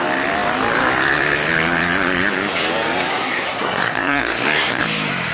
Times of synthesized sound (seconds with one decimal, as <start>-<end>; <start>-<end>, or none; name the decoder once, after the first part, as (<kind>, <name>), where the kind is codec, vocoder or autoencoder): 3.1-4.8 (codec, SNAC)